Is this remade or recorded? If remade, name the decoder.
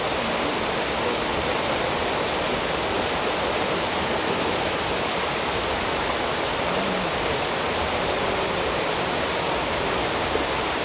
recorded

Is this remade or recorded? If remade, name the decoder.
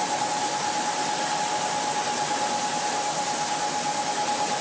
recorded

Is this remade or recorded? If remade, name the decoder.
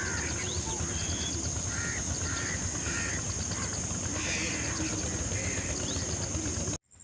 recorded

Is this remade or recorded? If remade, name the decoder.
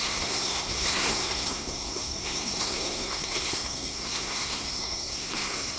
remade, codec, SNAC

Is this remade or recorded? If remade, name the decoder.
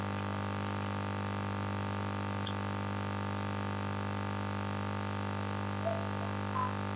recorded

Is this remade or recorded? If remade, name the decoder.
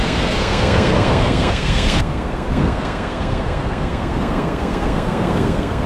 remade, codec, SNAC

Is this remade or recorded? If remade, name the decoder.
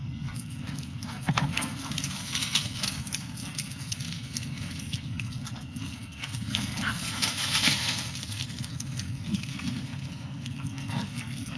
remade, codec, SNAC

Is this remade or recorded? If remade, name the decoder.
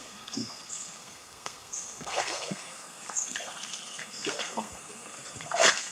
remade, codec, SNAC